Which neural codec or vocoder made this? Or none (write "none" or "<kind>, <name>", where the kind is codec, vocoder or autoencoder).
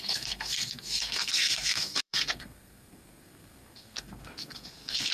codec, SNAC